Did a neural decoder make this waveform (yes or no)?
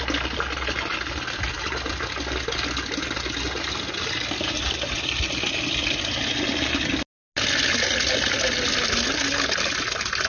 no